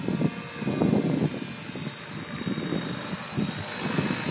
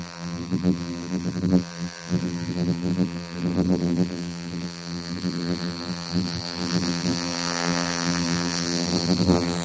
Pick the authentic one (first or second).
first